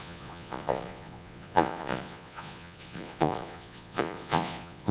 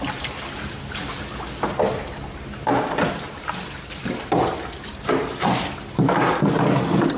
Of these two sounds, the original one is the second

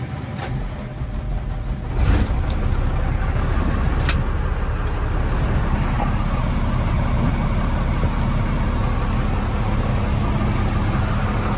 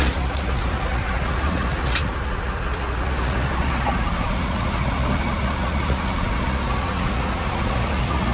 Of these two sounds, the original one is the first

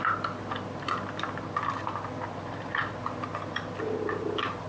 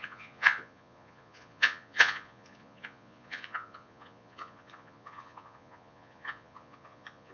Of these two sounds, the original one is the first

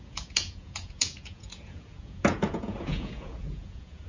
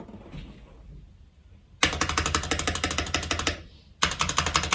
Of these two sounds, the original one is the second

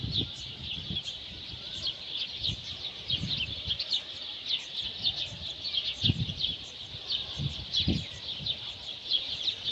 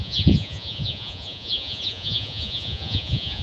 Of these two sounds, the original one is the first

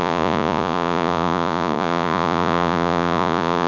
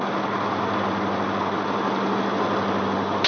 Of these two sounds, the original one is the second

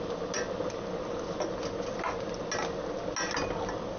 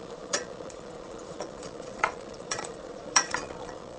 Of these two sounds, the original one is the first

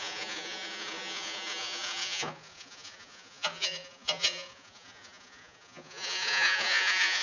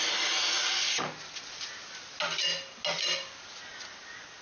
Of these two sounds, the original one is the second